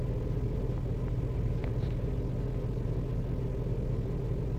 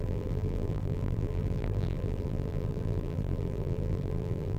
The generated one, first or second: second